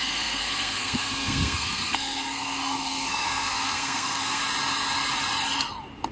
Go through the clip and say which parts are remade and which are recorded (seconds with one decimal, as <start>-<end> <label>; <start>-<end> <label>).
0.0-4.4 remade; 4.4-6.1 recorded